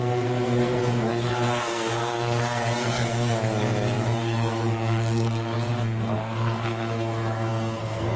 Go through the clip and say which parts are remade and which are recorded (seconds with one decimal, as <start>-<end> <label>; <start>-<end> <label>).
0.0-8.2 remade